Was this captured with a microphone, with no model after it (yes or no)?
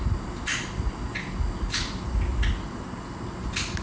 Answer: yes